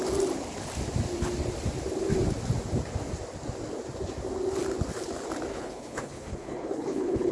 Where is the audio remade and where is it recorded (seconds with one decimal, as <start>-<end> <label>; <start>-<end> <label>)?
0.0-5.5 recorded; 5.5-7.3 remade